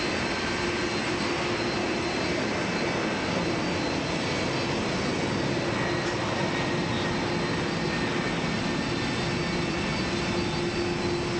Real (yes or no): yes